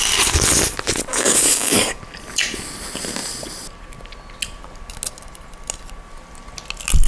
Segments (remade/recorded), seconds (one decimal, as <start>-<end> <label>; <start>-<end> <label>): 0.0-1.1 recorded; 1.1-2.0 remade; 2.0-7.1 recorded

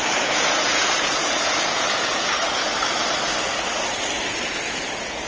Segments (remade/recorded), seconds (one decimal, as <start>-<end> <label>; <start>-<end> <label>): 0.0-2.7 remade; 2.7-4.3 recorded; 4.3-5.3 remade

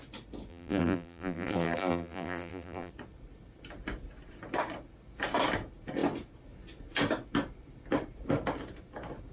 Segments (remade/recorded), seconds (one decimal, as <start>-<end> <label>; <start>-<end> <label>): 0.0-0.5 recorded; 0.5-2.9 remade; 2.9-9.3 recorded

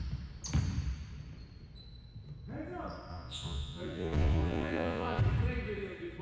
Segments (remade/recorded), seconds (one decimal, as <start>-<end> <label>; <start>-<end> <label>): 0.0-3.1 recorded; 3.1-5.2 remade; 5.2-6.2 recorded

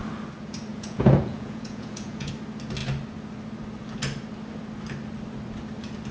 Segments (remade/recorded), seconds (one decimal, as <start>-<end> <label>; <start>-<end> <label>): 0.0-0.7 recorded; 0.7-2.3 remade; 2.3-6.1 recorded

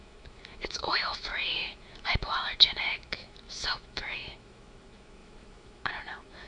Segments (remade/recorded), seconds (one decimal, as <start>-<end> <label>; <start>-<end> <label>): 0.0-6.5 remade

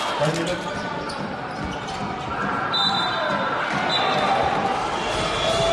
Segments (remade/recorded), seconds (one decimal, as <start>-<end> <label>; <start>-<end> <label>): 0.0-5.7 recorded

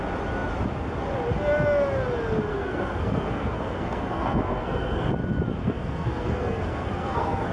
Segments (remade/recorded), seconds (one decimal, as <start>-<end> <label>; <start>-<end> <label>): 0.0-2.5 recorded; 2.5-5.1 remade; 5.1-5.6 recorded; 5.6-7.5 remade